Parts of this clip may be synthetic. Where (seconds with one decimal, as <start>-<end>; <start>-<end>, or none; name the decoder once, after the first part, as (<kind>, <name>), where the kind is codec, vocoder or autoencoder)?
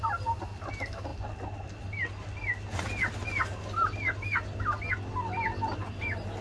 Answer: none